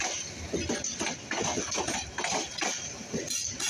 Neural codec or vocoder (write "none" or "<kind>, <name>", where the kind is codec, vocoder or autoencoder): none